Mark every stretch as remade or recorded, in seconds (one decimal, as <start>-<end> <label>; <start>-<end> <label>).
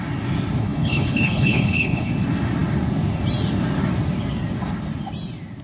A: 0.0-0.6 recorded; 0.6-2.1 remade; 2.1-5.6 recorded